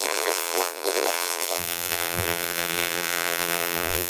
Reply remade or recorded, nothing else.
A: remade